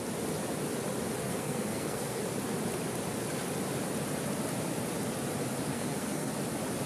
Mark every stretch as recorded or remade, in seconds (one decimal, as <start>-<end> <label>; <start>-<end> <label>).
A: 0.0-1.2 recorded; 1.2-2.2 remade; 2.2-5.7 recorded; 5.7-6.3 remade; 6.3-6.9 recorded